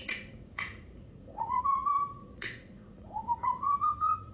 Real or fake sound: fake